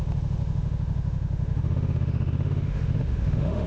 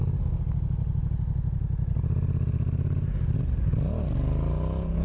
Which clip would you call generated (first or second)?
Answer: first